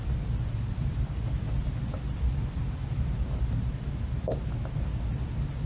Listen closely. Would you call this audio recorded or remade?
recorded